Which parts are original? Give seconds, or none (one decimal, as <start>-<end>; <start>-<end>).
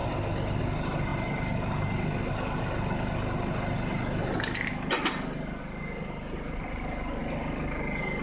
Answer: 0.0-8.2